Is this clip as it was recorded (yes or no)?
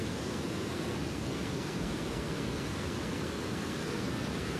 no